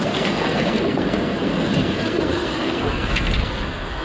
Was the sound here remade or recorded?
remade